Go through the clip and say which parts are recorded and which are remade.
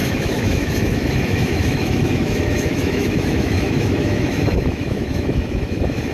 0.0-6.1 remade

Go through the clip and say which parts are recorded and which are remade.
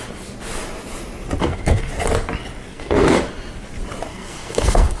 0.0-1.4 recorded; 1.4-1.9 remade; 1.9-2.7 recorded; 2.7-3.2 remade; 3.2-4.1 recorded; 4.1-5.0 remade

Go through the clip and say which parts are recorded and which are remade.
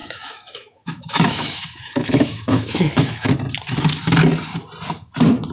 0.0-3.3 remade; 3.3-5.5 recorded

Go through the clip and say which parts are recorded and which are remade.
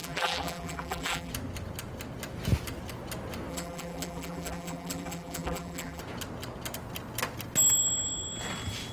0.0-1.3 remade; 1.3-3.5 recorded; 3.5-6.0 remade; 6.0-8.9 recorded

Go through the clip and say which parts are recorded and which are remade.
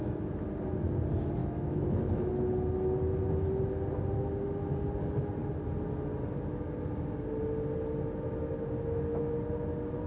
0.0-1.4 recorded; 1.4-2.3 remade; 2.3-10.1 recorded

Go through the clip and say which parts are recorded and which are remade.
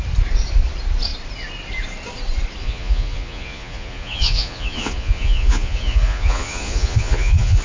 0.0-2.6 recorded; 2.6-7.6 remade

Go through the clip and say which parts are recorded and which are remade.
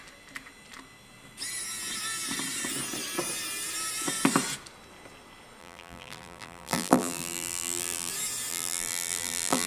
0.0-5.6 recorded; 5.6-8.1 remade; 8.1-8.5 recorded; 8.5-9.7 remade